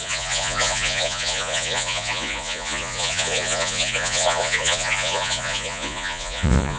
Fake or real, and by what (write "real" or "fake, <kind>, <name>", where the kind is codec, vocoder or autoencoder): fake, vocoder, Vocos